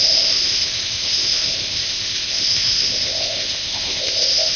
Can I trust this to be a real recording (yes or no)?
no